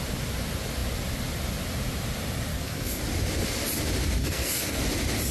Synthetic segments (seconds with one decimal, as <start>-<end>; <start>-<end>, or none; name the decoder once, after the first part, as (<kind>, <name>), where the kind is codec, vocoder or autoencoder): 2.5-3.0 (codec, SNAC); 4.2-4.8